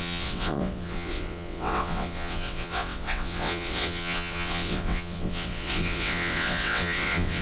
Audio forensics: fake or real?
fake